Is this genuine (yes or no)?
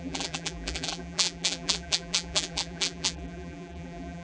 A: no